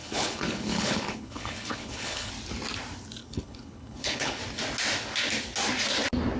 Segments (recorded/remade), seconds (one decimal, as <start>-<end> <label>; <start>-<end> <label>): 0.0-2.3 remade; 2.3-3.2 recorded; 3.2-4.4 remade; 4.4-6.4 recorded